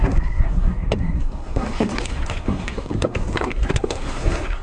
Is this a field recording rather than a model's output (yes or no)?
no